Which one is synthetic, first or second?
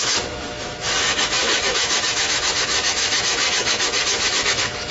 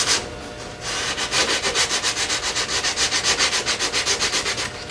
first